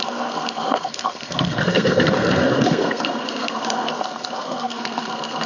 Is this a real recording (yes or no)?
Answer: no